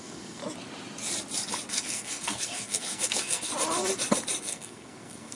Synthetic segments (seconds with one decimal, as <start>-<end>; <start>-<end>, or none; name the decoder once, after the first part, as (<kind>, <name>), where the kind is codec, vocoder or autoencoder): 0.0-0.4 (codec, SNAC); 1.7-3.5; 4.4-5.4

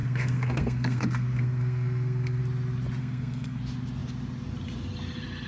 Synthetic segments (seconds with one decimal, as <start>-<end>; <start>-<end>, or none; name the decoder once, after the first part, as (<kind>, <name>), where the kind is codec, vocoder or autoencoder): 0.0-2.4 (codec, SNAC); 3.0-3.6

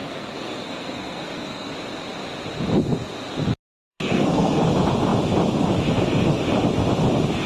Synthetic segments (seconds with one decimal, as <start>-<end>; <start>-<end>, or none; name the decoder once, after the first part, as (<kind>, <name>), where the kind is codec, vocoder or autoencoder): 0.0-1.7 (codec, SNAC); 3.9-4.6

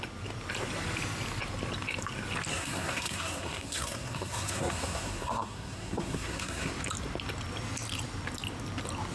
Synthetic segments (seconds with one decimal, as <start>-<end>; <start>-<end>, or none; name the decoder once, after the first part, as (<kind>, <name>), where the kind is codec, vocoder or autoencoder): 2.5-6.7 (codec, SNAC)

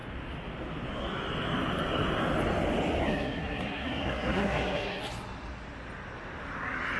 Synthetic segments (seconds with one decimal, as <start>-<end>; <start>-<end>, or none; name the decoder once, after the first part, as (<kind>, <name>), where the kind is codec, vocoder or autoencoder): 3.0-5.0 (codec, SNAC)

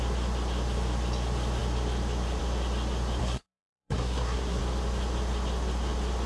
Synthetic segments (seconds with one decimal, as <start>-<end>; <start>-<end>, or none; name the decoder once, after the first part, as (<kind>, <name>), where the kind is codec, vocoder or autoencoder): 3.2-4.6 (codec, SNAC)

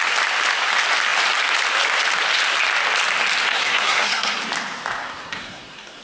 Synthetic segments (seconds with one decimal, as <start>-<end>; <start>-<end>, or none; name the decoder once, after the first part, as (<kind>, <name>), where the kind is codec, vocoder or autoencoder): 3.5-4.4 (codec, SNAC); 5.0-6.0